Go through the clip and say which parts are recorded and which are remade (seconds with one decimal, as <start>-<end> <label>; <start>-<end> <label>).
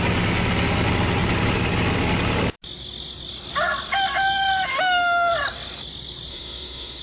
0.0-4.7 recorded; 4.7-5.3 remade; 5.3-6.3 recorded; 6.3-7.0 remade